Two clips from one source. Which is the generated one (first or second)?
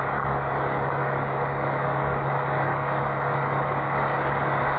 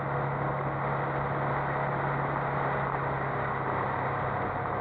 first